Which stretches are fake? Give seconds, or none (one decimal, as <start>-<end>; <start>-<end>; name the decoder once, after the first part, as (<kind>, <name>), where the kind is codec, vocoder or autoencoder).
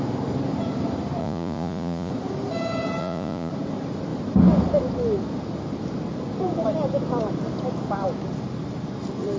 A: 1.2-2.1 (vocoder, Vocos); 3.0-3.5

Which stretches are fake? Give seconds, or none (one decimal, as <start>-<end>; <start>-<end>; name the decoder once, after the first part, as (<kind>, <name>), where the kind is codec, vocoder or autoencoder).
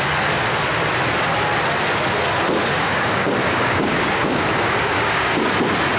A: 2.6-5.6 (codec, DAC)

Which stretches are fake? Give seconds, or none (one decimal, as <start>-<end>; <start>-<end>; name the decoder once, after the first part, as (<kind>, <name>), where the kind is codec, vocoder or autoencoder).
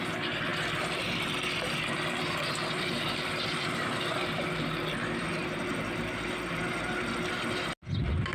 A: 0.5-3.6 (vocoder, BigVGAN v2)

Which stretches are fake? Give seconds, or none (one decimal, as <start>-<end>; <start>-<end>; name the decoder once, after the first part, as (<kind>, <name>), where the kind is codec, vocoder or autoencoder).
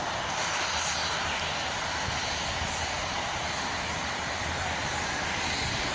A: none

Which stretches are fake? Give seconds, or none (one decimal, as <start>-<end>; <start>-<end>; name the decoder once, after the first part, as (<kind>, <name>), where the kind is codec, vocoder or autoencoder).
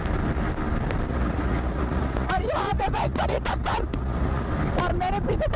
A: 1.1-4.5 (vocoder, Vocos)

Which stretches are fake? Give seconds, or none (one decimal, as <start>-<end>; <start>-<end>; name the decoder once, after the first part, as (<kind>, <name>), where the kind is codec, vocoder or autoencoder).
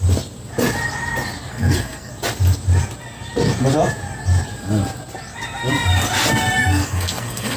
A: 1.5-2.1 (codec, SNAC); 6.6-7.6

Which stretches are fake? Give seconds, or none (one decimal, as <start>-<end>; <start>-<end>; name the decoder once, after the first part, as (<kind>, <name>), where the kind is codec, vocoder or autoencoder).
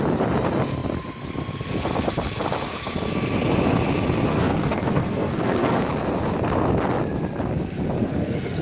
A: 4.3-5.8 (codec, SNAC); 8.0-8.6